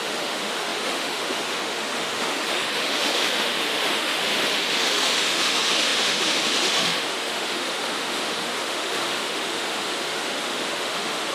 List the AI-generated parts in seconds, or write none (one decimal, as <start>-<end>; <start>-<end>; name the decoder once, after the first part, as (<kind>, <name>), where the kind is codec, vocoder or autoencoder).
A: 0.0-11.3 (autoencoder, DAC-VAE)